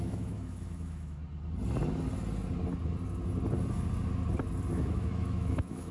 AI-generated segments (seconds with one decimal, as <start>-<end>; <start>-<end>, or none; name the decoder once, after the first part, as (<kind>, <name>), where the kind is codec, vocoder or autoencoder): 0.0-1.2 (autoencoder, DAC-VAE); 4.7-5.9